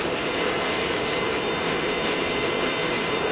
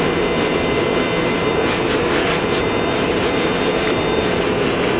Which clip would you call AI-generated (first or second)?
first